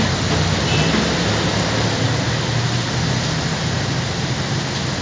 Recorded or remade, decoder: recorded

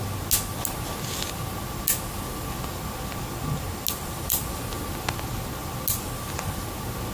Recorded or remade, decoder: recorded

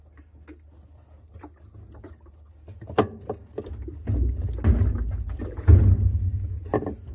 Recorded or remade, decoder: recorded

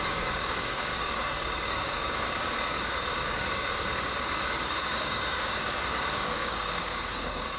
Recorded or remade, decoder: remade, codec, DAC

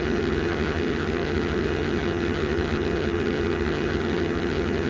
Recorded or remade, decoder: remade, vocoder, HiFi-GAN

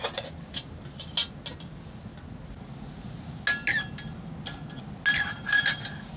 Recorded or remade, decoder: recorded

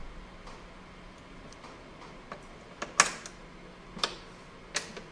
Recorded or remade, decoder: recorded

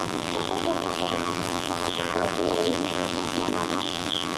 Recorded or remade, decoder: remade, vocoder, BigVGAN v2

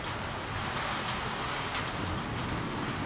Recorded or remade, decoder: recorded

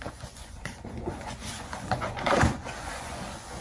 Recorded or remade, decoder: remade, vocoder, Vocos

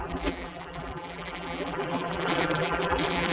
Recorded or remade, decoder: remade, vocoder, BigVGAN v2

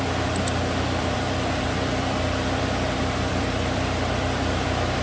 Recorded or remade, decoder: remade, vocoder, BigVGAN v2